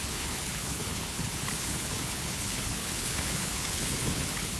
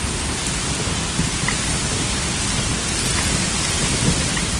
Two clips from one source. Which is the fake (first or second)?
first